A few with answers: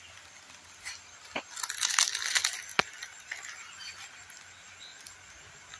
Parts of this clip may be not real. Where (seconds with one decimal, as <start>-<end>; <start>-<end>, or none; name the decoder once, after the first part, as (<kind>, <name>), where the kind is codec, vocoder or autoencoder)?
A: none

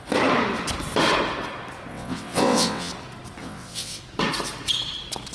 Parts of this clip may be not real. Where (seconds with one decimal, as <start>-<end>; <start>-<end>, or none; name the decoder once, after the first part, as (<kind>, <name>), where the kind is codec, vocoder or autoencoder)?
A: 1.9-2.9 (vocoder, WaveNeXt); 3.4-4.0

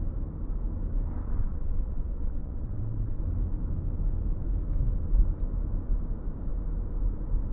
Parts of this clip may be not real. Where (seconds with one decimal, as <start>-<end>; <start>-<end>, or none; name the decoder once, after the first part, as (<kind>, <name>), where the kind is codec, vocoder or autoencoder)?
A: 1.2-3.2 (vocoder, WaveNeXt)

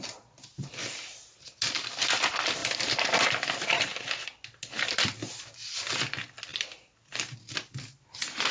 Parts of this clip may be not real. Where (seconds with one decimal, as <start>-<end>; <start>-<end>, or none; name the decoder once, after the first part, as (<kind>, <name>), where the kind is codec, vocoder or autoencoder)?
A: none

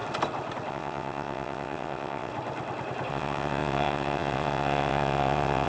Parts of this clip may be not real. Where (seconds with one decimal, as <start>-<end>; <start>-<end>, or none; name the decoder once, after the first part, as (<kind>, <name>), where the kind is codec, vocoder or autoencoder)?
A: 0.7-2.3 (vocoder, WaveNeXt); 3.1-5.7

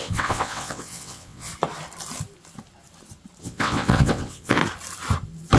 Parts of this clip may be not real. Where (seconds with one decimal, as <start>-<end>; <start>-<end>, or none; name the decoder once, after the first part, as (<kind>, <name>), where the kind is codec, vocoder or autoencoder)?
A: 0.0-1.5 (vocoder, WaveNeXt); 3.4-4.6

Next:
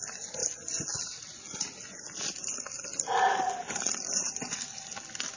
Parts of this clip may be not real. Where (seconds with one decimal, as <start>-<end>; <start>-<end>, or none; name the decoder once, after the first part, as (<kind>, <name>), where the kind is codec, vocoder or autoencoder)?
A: none